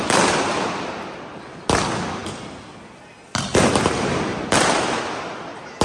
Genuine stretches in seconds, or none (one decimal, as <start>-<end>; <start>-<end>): 0.0-5.8